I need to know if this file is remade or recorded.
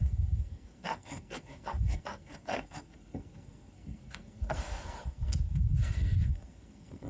remade